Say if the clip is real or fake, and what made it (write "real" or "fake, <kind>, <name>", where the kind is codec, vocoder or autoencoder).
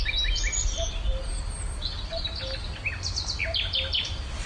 real